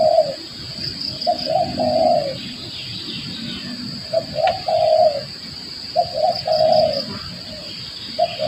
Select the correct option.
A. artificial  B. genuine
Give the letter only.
B